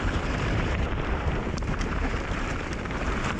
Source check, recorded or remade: remade